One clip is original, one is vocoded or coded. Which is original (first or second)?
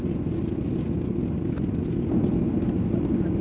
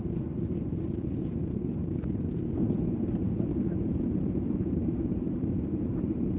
first